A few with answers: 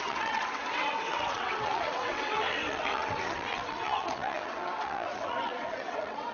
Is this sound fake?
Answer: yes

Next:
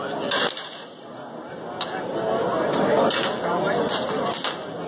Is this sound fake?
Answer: no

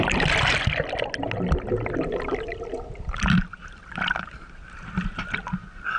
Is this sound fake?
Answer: no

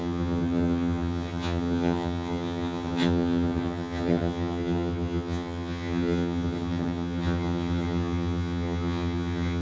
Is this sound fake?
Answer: yes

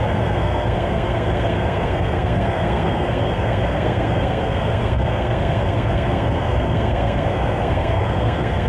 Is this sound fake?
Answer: yes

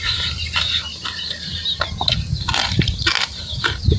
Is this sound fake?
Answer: yes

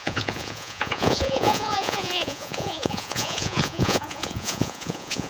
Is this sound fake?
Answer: yes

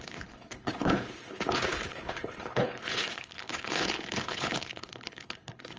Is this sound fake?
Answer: yes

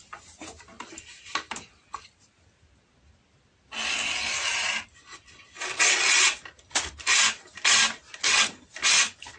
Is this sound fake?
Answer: no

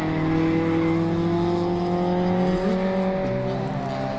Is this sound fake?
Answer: no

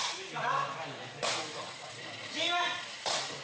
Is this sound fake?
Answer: no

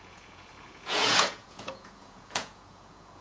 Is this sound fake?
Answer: yes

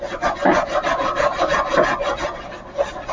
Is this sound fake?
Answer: no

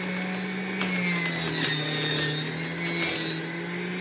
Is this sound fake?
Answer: no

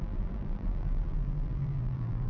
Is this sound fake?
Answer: yes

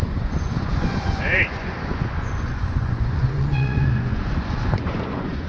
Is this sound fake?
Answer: yes